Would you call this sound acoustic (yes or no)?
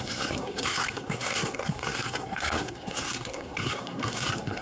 no